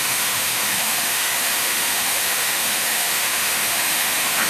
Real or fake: fake